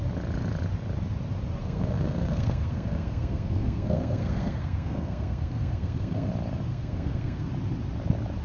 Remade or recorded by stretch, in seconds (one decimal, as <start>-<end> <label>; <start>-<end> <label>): 0.0-1.6 recorded; 1.6-6.3 remade; 6.3-6.7 recorded; 6.7-7.5 remade; 7.5-8.4 recorded